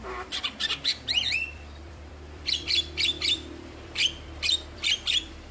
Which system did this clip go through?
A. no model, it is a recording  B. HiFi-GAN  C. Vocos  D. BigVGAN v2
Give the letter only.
D